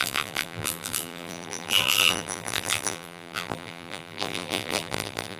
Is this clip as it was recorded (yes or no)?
no